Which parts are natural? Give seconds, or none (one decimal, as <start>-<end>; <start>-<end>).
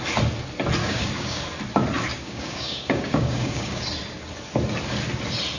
0.0-0.8; 1.4-2.1; 3.8-5.6